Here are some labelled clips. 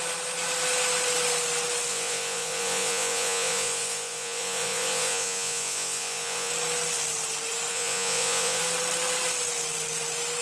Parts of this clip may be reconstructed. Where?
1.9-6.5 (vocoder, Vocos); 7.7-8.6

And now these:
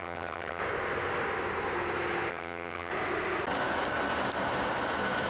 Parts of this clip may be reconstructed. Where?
0.0-0.6 (vocoder, HiFi-GAN); 2.3-2.9

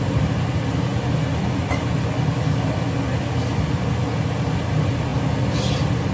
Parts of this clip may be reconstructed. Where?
none

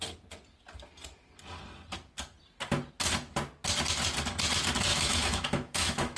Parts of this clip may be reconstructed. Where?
4.9-6.2 (autoencoder, DAC-VAE)

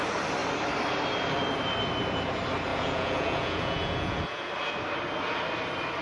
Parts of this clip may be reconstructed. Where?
2.7-4.5 (vocoder, Vocos)

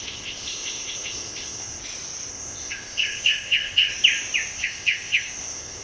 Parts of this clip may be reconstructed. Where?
0.0-1.8 (codec, ZipCodec); 2.3-3.9; 4.5-5.8